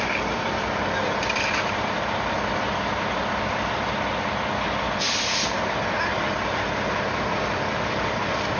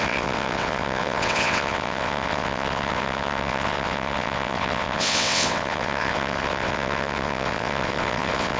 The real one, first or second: first